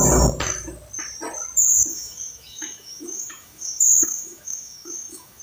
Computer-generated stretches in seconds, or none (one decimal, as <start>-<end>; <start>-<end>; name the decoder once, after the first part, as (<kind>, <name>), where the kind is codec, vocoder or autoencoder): 1.9-5.4 (autoencoder, DAC-VAE)